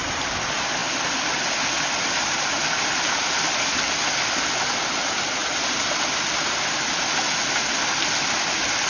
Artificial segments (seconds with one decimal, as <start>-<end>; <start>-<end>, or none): none

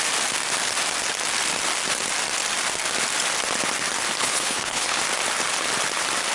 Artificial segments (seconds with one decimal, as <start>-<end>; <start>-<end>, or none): 4.2-5.0

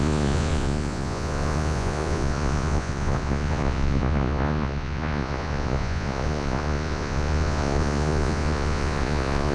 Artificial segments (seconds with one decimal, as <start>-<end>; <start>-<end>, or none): 0.0-9.5

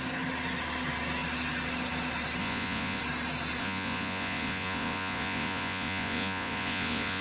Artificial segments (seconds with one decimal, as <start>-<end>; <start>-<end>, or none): 2.4-3.0; 3.6-7.2